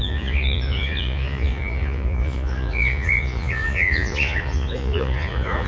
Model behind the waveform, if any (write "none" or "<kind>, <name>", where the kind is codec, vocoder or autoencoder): vocoder, Vocos